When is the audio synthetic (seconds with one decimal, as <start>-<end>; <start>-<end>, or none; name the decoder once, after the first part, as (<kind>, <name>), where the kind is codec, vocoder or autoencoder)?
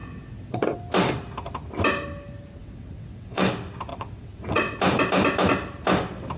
0.0-0.8 (vocoder, WaveNeXt); 2.6-3.5; 3.9-4.8